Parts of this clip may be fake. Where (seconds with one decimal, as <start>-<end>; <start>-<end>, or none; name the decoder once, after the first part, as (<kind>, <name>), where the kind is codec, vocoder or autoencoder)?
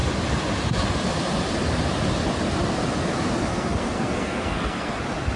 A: 3.5-5.0 (codec, SNAC)